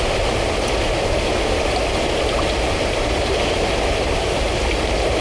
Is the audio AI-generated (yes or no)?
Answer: no